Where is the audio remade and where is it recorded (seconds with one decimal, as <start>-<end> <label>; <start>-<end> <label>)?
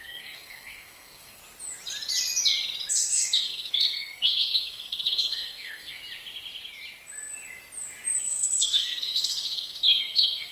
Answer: 0.0-1.4 remade; 1.4-2.9 recorded; 2.9-6.0 remade; 6.0-8.2 recorded; 8.2-10.5 remade